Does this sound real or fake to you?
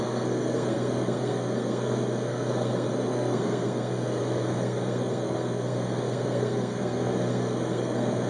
fake